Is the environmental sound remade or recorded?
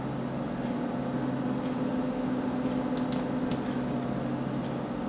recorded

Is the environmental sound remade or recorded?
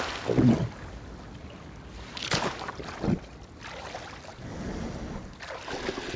recorded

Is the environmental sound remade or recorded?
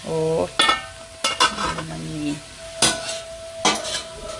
recorded